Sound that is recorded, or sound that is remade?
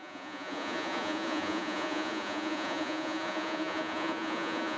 remade